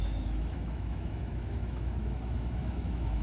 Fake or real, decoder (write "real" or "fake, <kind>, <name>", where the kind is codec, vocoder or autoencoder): fake, autoencoder, DAC-VAE